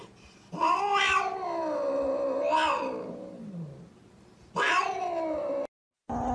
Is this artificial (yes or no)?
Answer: no